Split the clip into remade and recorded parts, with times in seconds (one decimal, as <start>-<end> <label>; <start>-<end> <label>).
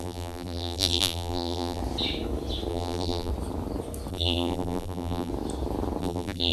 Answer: 0.0-1.8 remade; 1.8-2.7 recorded; 2.7-3.3 remade; 3.3-4.1 recorded; 4.1-5.3 remade; 5.3-6.0 recorded; 6.0-6.5 remade